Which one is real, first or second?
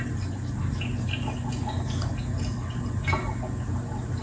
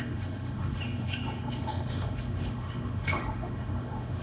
first